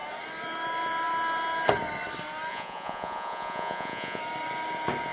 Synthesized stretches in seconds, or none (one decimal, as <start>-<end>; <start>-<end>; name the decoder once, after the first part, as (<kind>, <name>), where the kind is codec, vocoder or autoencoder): 2.5-4.2 (vocoder, Vocos)